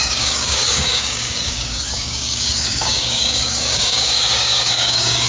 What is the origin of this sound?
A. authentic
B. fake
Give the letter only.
B